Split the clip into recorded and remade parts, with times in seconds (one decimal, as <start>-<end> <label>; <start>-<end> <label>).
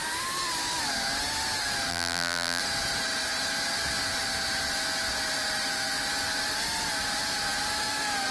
0.0-1.9 recorded; 1.9-2.6 remade; 2.6-8.3 recorded